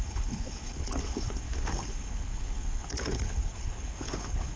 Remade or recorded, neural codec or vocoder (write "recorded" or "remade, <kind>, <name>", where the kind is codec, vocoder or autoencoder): remade, codec, HILCodec